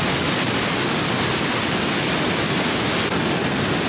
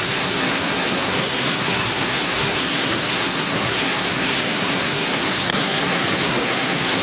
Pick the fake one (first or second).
second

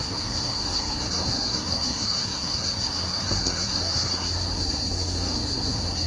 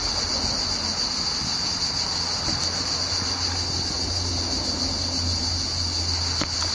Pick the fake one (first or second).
first